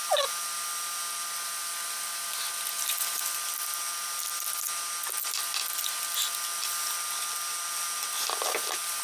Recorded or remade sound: recorded